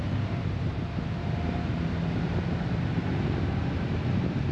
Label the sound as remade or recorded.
recorded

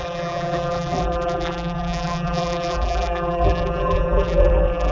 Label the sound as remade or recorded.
remade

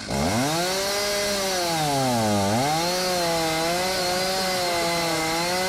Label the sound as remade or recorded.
recorded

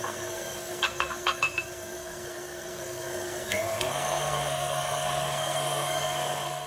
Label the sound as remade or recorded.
remade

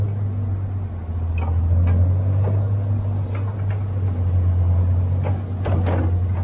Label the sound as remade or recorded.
recorded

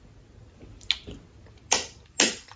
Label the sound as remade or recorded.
recorded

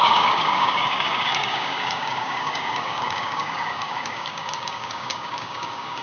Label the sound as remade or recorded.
remade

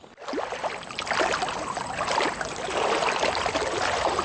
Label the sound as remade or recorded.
recorded